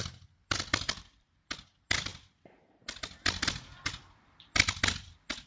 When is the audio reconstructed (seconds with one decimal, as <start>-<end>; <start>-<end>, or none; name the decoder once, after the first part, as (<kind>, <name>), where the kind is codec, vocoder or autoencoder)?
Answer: none